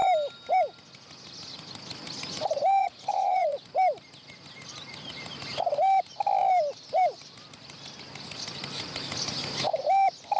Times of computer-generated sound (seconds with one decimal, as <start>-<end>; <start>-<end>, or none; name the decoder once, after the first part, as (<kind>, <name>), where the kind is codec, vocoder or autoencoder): 2.8-3.6 (vocoder, Vocos)